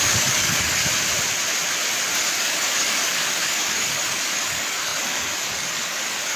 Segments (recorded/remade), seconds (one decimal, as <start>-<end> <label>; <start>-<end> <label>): 0.0-0.8 remade; 0.8-2.4 recorded; 2.4-6.4 remade